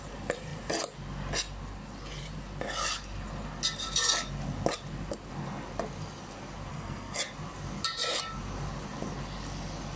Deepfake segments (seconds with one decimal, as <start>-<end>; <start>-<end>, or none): 6.7-7.2